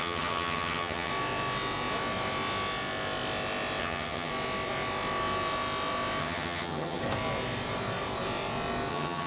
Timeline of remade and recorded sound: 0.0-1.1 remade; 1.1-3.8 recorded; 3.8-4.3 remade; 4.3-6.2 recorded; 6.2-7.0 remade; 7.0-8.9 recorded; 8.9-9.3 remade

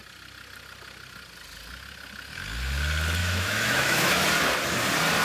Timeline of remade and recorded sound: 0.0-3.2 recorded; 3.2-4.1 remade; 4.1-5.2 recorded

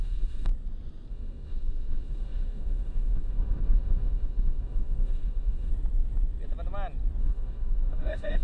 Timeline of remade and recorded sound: 0.0-0.5 remade; 0.5-1.1 recorded; 1.1-5.7 remade; 5.7-7.2 recorded; 7.2-8.4 remade

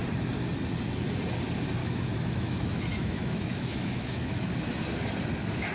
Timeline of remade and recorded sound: 0.0-1.8 recorded; 1.8-4.5 remade; 4.5-5.7 recorded

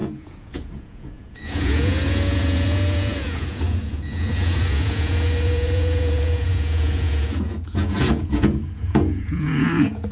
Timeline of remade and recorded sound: 0.0-10.1 remade

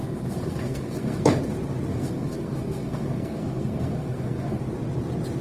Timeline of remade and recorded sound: 0.0-1.4 remade; 1.4-1.9 recorded; 1.9-4.6 remade; 4.6-5.4 recorded

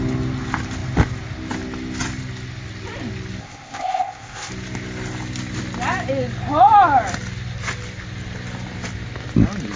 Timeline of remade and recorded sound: 0.0-3.4 recorded; 3.4-4.5 remade; 4.5-9.8 recorded